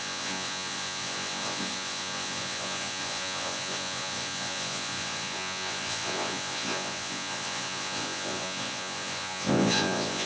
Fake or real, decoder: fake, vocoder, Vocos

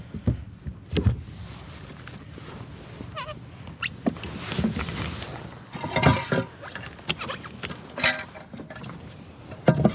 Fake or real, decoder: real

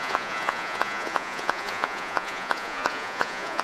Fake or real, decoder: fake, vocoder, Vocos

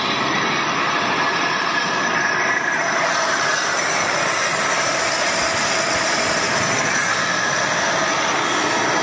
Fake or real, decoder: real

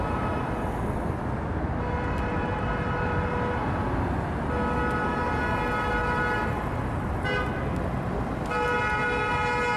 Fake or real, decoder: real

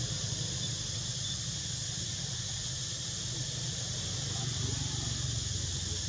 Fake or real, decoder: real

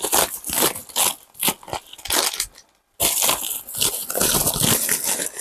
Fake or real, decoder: real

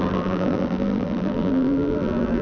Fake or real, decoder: fake, vocoder, BigVGAN v2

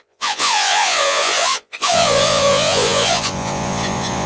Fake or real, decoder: fake, vocoder, Vocos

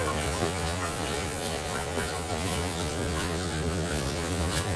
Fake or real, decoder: fake, vocoder, Vocos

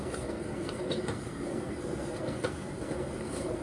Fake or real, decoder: fake, codec, SNAC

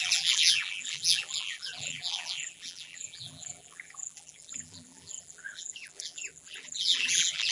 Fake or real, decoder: fake, vocoder, BigVGAN v2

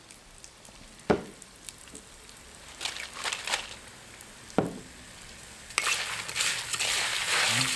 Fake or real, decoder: real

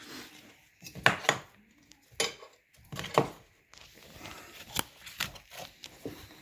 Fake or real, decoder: real